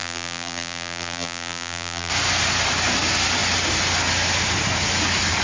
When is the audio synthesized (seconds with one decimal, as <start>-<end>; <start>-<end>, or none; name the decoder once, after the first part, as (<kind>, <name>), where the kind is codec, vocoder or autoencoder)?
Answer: 0.0-2.1 (vocoder, BigVGAN v2)